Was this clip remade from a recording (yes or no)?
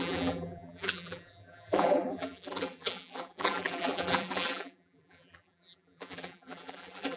yes